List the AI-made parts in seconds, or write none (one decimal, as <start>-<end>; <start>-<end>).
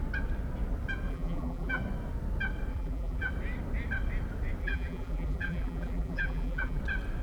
1.1-1.8; 2.7-3.3; 4.6-6.8